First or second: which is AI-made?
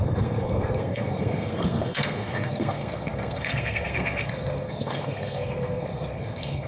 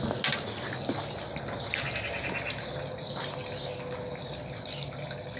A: first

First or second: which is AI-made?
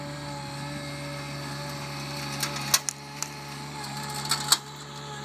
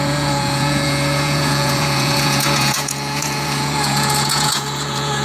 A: second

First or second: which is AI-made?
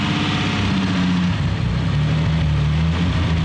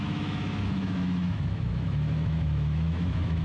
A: second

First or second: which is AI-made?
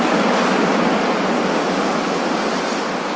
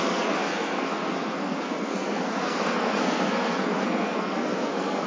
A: second